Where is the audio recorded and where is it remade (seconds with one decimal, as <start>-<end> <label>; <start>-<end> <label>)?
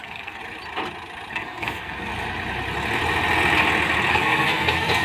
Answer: 0.0-0.4 remade; 0.4-1.3 recorded; 1.3-2.1 remade; 2.1-4.1 recorded; 4.1-5.0 remade